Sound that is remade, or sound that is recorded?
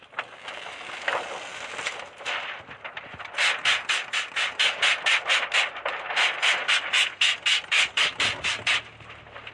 recorded